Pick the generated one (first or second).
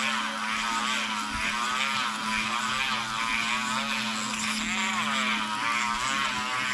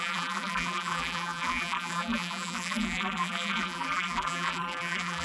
second